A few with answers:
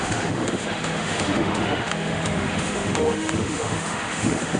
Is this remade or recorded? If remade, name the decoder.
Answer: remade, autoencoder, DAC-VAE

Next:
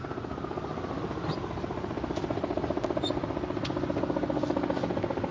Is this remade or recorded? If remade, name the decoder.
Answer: recorded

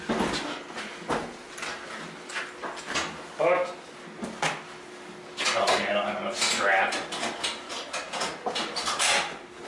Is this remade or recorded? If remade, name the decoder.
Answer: recorded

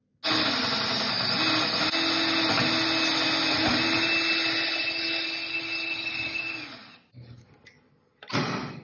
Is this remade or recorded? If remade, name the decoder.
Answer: recorded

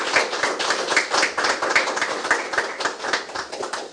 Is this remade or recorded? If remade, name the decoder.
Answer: recorded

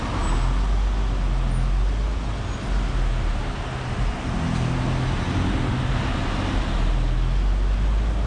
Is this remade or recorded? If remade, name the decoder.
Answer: recorded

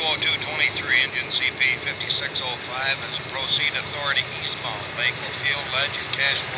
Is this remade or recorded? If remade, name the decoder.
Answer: recorded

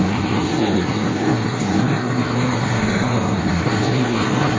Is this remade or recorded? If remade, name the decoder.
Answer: remade, codec, SNAC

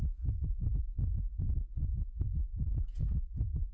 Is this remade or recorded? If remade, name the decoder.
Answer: remade, vocoder, Vocos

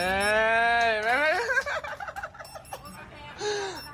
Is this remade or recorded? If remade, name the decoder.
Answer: recorded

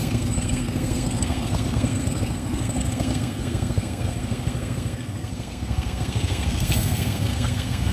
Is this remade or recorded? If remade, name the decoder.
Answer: remade, codec, SNAC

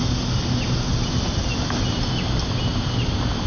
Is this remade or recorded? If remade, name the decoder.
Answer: recorded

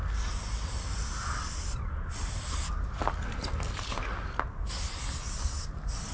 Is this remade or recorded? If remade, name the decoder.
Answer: recorded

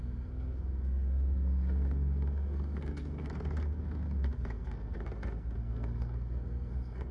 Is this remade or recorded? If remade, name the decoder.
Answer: remade, codec, SNAC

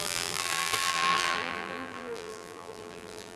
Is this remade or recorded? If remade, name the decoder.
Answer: remade, vocoder, BigVGAN v2